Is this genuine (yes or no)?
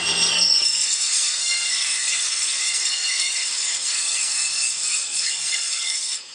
no